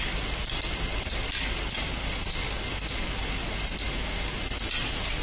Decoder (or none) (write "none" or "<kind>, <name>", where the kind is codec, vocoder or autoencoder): none